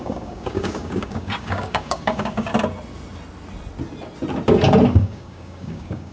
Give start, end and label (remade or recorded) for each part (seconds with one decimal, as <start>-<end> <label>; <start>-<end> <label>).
0.0-2.5 remade; 2.5-4.9 recorded; 4.9-6.1 remade